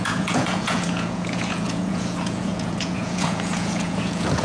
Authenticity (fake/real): fake